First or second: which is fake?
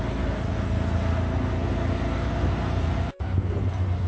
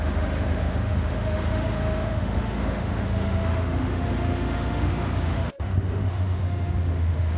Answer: second